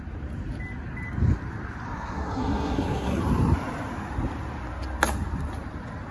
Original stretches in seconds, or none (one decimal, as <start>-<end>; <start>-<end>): 0.0-1.9; 3.2-6.1